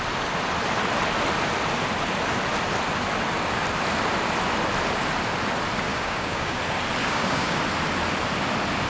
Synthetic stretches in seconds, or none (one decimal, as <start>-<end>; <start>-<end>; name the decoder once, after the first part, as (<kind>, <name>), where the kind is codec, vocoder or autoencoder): 5.9-6.6 (codec, DAC); 7.0-7.6